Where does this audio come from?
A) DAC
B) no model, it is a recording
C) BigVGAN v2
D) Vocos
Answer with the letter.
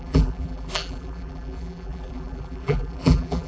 C